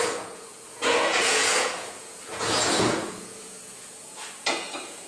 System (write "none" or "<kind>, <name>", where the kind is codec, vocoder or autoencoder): vocoder, Vocos